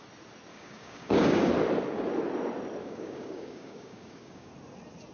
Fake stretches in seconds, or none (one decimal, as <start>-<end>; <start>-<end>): 0.5-1.5; 2.8-4.5